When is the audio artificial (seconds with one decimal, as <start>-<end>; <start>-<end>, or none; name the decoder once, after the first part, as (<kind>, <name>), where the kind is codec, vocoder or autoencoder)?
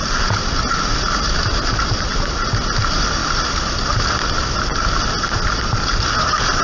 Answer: none